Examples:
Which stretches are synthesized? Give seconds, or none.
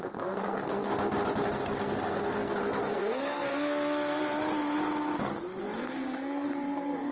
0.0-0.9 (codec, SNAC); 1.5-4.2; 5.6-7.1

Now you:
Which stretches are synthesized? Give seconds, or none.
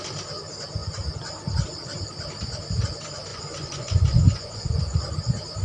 3.3-4.8 (vocoder, Vocos)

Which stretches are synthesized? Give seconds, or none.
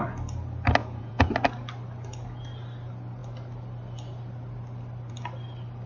0.8-1.3 (vocoder, Vocos)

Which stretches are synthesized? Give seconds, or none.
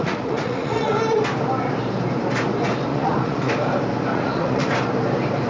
0.0-0.9 (vocoder, Vocos); 2.9-3.5; 4.1-4.7